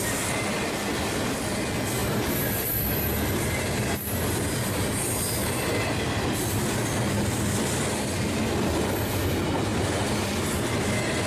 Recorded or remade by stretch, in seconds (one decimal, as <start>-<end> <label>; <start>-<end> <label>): 0.0-11.3 recorded